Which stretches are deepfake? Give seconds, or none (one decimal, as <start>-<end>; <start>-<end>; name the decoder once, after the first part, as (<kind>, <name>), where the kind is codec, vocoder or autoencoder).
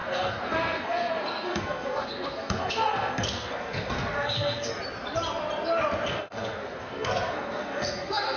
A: 0.0-4.7 (codec, SNAC); 6.1-8.4